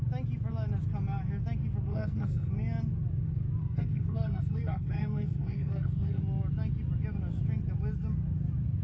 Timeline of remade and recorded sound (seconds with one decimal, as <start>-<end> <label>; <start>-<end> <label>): 0.0-1.9 recorded; 1.9-2.5 remade; 2.5-3.6 recorded; 3.6-6.2 remade; 6.2-8.8 recorded